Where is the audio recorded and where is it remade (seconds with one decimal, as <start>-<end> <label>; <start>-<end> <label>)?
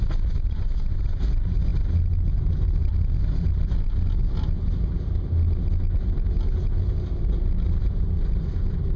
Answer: 0.0-9.0 recorded